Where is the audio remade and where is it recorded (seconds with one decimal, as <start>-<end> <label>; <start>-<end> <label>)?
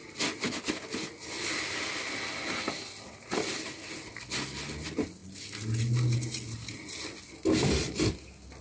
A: 0.0-8.6 recorded